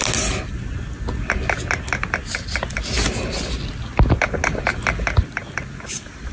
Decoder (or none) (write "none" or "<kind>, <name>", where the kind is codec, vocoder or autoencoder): none